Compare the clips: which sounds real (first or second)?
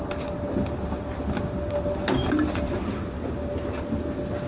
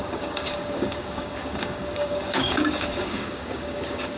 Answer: first